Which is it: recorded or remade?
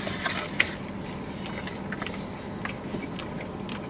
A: recorded